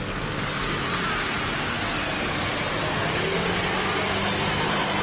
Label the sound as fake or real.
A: real